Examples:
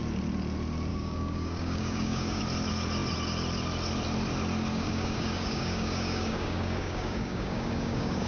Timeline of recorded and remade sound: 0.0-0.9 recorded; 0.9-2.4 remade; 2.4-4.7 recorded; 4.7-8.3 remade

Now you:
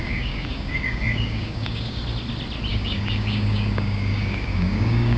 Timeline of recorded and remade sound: 0.0-2.0 remade; 2.0-2.7 recorded; 2.7-5.2 remade

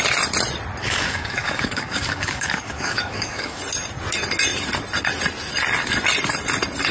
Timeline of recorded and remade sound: 0.0-0.8 recorded; 0.8-3.6 remade; 3.6-6.9 recorded

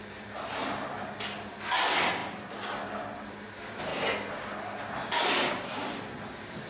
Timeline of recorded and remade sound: 0.0-6.7 recorded

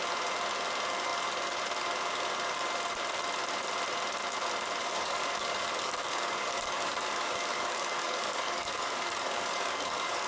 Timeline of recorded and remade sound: 0.0-4.8 recorded; 4.8-10.3 remade